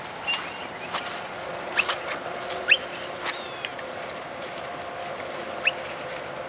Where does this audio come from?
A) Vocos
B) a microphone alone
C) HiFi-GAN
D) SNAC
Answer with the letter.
B